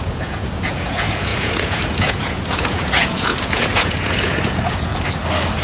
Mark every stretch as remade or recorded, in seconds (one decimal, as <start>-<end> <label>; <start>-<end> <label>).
0.0-4.9 remade; 4.9-5.6 recorded